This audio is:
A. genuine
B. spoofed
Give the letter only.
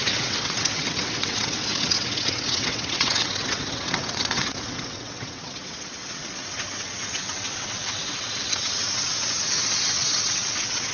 B